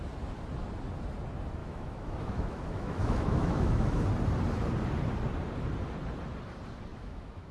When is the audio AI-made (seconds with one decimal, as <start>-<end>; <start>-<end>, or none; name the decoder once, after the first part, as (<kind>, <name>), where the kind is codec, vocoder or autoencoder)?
1.6-4.0 (autoencoder, DAC-VAE); 6.9-7.5